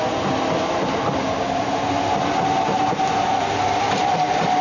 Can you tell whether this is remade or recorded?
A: recorded